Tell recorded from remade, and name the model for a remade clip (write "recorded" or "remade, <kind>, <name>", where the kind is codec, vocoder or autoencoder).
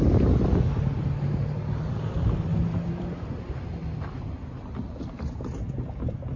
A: recorded